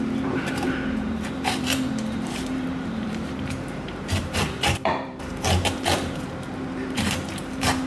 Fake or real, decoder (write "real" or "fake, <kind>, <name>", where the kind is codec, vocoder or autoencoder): fake, vocoder, BigVGAN v2